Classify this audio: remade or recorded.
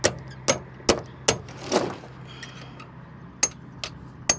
recorded